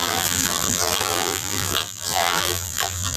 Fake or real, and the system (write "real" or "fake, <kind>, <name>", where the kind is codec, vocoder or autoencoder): fake, vocoder, BigVGAN v2